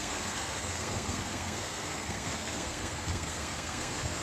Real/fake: fake